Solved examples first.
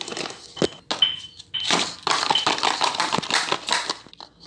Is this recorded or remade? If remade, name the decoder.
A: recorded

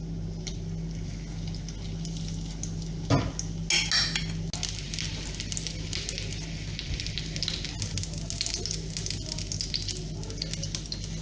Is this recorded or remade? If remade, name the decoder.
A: recorded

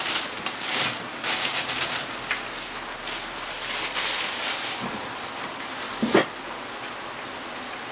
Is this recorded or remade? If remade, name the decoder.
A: recorded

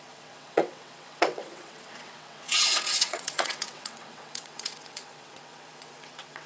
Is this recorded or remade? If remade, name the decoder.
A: remade, vocoder, WaveNeXt